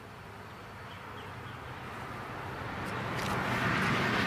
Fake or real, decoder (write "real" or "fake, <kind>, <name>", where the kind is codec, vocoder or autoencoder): real